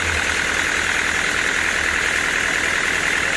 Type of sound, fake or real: real